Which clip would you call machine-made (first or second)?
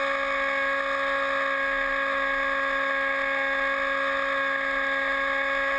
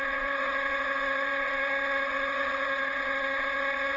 second